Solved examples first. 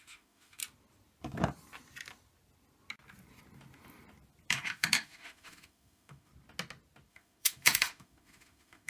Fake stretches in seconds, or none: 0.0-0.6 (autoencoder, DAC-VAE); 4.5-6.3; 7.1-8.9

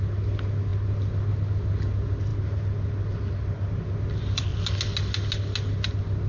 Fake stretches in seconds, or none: none

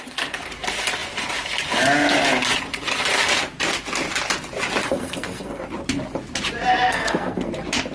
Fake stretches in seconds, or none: 4.8-5.6 (codec, SNAC); 6.9-7.5

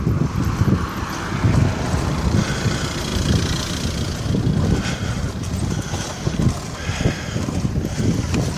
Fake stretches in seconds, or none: none

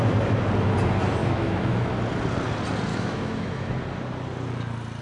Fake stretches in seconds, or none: 1.2-1.9 (autoencoder, DAC-VAE); 2.9-3.7